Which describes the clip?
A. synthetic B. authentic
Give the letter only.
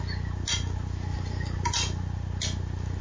B